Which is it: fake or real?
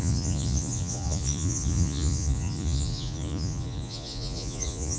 fake